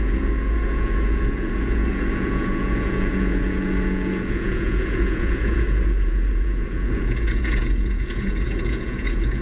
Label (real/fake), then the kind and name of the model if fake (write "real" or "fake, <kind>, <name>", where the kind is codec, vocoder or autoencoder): fake, vocoder, Vocos